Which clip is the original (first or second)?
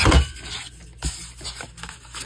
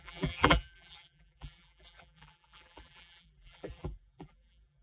first